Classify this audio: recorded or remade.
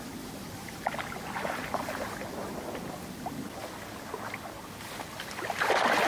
remade